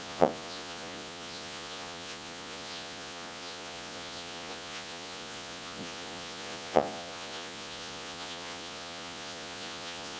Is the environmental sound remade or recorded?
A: remade